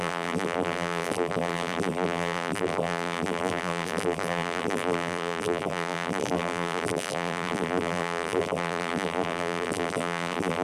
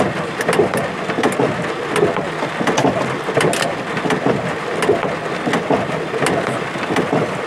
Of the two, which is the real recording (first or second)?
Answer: second